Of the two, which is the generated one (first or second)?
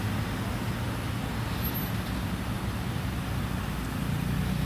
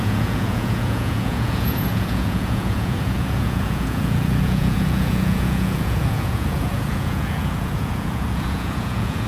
second